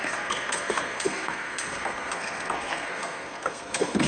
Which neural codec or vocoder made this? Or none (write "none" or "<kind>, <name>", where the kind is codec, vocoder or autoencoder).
codec, SNAC